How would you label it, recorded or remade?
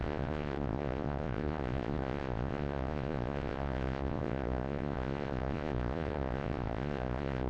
remade